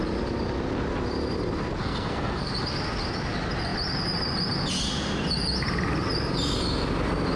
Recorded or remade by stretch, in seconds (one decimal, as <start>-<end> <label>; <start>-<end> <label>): 0.0-1.8 recorded; 1.8-2.5 remade; 2.5-7.4 recorded